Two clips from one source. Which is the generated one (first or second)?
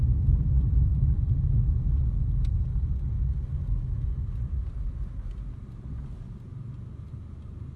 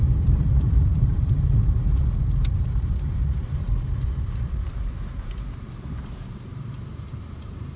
second